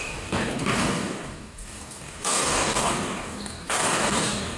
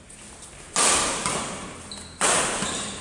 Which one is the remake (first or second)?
first